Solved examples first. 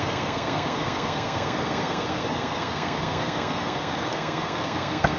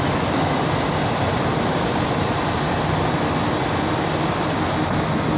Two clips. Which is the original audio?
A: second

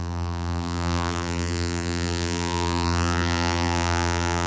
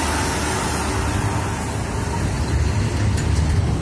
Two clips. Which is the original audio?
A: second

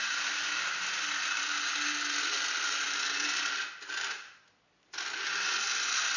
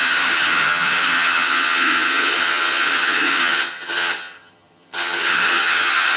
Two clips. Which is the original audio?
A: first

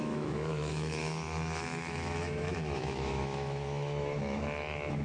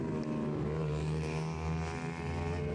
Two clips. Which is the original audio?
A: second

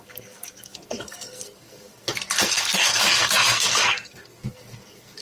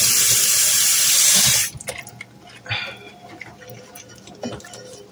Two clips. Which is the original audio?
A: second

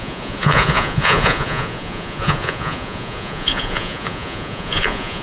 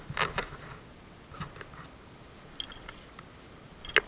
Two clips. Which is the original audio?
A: second